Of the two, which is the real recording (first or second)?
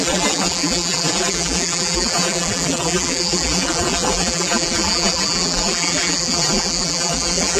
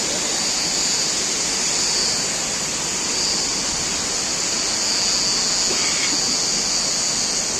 second